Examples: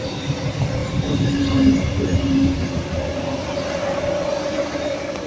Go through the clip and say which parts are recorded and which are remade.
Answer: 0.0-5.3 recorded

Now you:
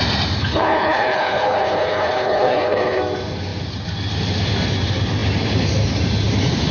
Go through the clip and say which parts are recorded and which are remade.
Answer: 0.0-0.4 recorded; 0.4-3.0 remade; 3.0-6.7 recorded

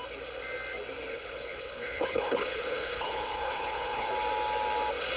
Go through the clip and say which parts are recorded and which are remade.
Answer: 0.0-1.1 recorded; 1.1-4.1 remade; 4.1-5.2 recorded

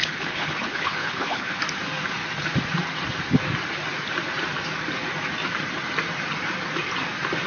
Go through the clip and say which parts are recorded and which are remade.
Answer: 0.0-1.6 remade; 1.6-7.5 recorded

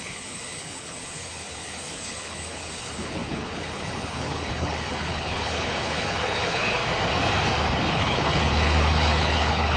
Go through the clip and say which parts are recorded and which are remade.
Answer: 0.0-6.8 remade; 6.8-7.9 recorded; 7.9-9.8 remade

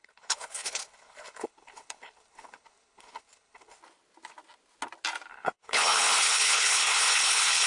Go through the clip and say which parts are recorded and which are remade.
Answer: 0.0-3.8 remade; 3.8-5.3 recorded; 5.3-7.7 remade

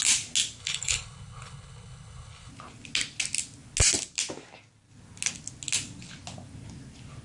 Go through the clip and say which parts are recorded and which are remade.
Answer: 0.0-0.6 recorded; 0.6-2.5 remade; 2.5-7.2 recorded